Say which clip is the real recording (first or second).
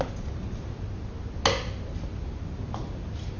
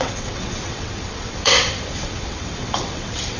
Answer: first